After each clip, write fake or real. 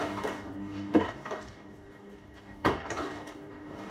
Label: fake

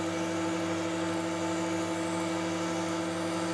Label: real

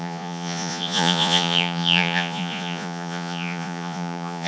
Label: fake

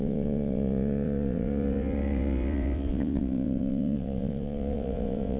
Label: fake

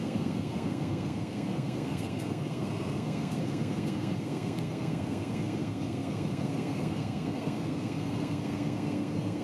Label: fake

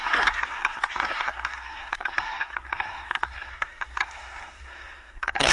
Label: fake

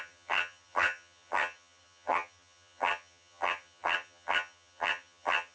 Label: fake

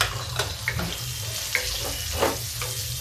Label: real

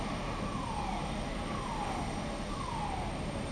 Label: real